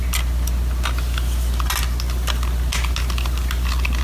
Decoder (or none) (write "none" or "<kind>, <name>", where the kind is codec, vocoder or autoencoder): none